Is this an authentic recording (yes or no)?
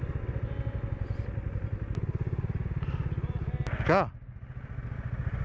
yes